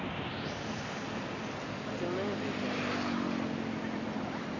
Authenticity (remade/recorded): recorded